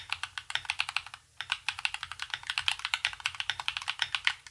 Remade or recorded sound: recorded